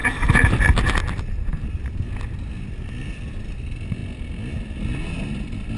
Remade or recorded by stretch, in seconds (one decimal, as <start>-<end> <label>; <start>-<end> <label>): 0.0-5.8 recorded